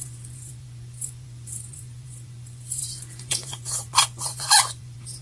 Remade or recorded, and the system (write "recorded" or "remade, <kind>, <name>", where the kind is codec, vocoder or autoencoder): remade, vocoder, Vocos